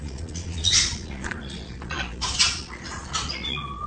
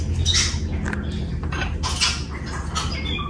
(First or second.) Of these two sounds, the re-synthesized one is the first